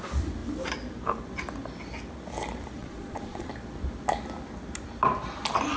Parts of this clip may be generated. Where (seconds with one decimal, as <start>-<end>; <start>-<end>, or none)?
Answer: 2.8-3.5